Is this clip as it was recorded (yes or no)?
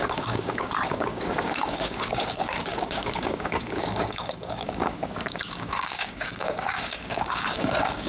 no